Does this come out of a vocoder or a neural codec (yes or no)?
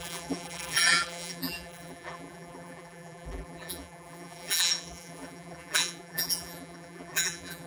yes